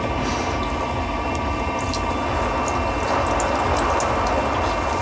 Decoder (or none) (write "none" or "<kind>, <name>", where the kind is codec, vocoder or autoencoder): none